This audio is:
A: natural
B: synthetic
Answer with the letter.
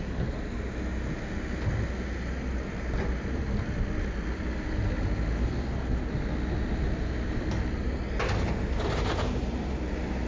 A